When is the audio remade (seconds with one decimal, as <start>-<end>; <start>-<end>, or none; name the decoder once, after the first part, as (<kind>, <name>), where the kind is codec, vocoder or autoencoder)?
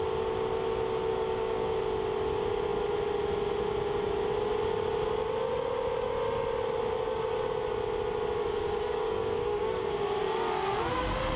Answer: 1.1-1.8 (codec, DAC); 8.4-9.9